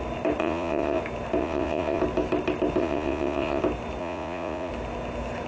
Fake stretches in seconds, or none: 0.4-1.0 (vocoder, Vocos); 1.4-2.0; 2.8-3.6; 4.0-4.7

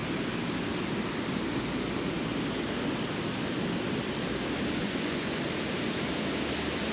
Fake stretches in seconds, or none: 4.8-5.4 (vocoder, Vocos)

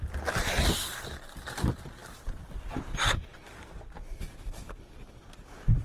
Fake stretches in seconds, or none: 2.0-2.6 (vocoder, BigVGAN v2); 3.3-4.8

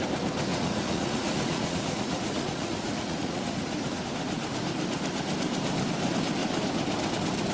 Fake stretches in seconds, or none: 0.5-4.0 (vocoder, Vocos)

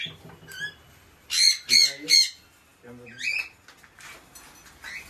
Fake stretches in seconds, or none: none

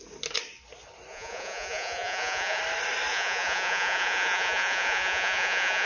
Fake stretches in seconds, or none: 1.1-2.6 (vocoder, Vocos); 3.1-5.9

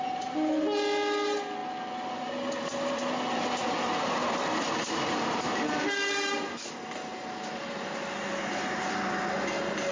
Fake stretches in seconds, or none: none

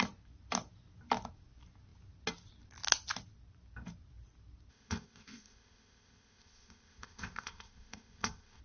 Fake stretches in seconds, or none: 4.7-8.6 (codec, ZipCodec)